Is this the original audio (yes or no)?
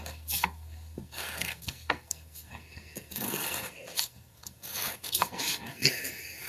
no